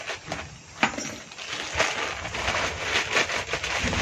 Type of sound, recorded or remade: recorded